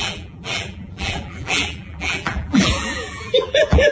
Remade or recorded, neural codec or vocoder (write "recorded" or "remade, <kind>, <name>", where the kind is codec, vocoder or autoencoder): remade, vocoder, BigVGAN v2